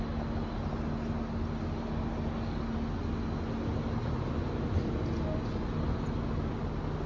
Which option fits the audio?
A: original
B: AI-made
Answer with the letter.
A